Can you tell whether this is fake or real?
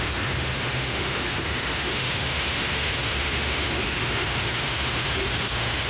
fake